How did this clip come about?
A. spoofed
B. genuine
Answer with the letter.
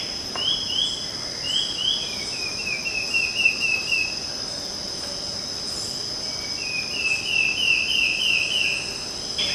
B